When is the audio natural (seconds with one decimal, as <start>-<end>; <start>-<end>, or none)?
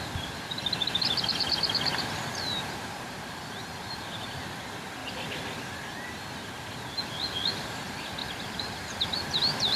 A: 0.0-8.2